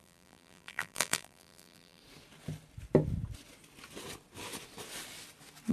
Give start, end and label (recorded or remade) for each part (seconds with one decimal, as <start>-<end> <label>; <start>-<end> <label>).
0.0-2.0 remade; 2.0-5.7 recorded